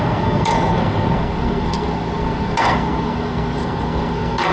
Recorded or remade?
remade